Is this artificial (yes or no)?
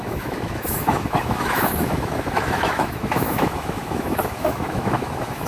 yes